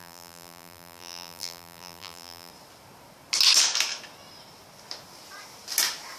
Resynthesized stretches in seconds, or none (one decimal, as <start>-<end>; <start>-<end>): 0.0-2.5